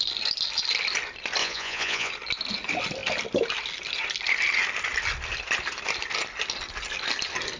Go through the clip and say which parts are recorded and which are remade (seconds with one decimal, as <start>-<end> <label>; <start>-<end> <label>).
0.0-1.4 recorded; 1.4-2.1 remade; 2.1-7.6 recorded